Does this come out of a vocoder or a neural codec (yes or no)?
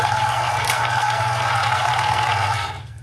yes